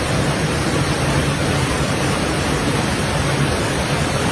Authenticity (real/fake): fake